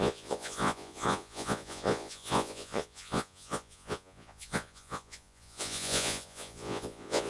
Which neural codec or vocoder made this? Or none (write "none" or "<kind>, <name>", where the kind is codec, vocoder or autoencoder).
vocoder, Vocos